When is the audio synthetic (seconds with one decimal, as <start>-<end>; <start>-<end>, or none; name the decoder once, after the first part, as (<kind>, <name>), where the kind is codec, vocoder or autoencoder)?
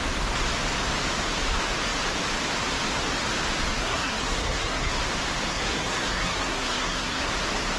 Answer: 3.7-4.9 (codec, SNAC); 5.5-7.3